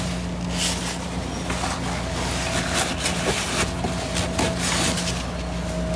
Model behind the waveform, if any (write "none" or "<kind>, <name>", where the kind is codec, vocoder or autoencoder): none